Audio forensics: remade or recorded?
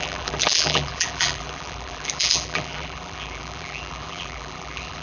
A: remade